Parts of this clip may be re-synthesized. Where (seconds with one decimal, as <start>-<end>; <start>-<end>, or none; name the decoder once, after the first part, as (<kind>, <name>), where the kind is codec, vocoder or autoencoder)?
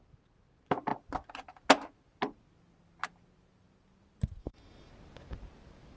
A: 4.4-4.9 (autoencoder, DAC-VAE)